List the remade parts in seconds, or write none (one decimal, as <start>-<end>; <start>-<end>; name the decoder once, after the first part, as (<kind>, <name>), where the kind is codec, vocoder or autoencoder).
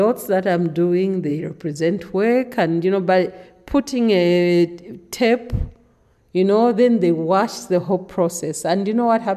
none